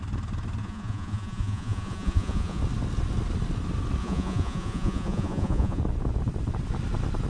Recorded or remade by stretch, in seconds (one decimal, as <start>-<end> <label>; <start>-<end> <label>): 0.0-0.6 recorded; 0.6-2.6 remade; 2.6-4.0 recorded; 4.0-5.8 remade; 5.8-7.3 recorded